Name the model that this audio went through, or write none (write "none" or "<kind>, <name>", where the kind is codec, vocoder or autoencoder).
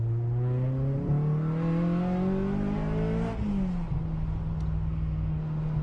none